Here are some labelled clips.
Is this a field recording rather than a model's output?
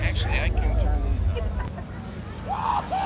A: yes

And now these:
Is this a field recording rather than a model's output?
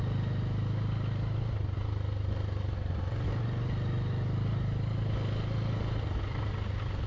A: yes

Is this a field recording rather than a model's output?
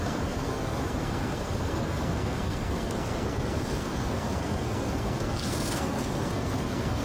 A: no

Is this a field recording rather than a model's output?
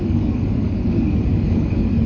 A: no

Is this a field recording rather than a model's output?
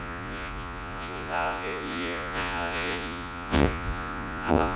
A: no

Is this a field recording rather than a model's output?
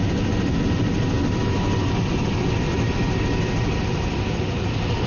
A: yes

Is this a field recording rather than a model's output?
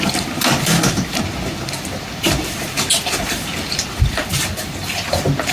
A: yes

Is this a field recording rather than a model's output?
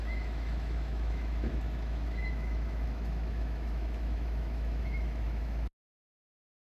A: no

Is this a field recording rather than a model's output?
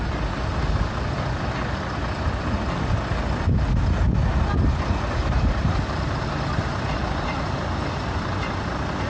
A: yes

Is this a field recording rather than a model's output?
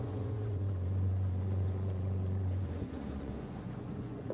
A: no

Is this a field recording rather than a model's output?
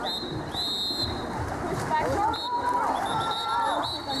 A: yes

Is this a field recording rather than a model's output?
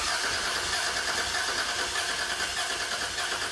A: yes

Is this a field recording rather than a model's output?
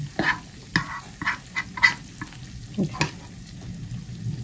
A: yes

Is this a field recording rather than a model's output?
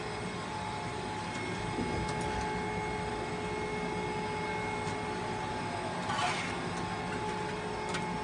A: yes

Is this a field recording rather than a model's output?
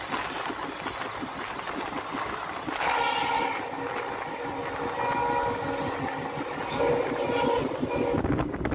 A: yes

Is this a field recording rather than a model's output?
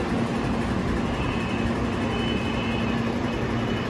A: yes